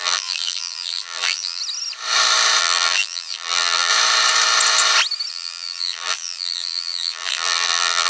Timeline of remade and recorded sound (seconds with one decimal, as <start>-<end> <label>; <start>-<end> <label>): 0.0-1.6 remade; 1.6-2.6 recorded; 2.6-3.9 remade; 3.9-5.3 recorded; 5.3-8.1 remade